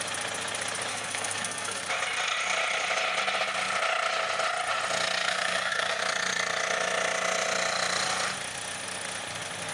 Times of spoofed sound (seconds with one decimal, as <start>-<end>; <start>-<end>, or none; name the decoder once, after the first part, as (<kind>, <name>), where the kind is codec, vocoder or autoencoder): 0.9-1.8 (codec, SNAC); 5.2-6.0